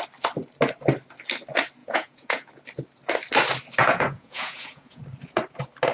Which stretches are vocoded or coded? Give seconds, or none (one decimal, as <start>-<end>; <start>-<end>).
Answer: 1.8-2.5; 3.8-5.0